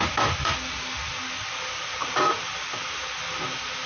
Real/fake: real